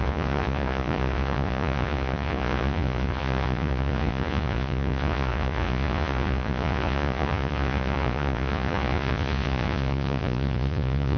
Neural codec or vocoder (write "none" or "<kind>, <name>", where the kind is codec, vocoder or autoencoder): vocoder, Vocos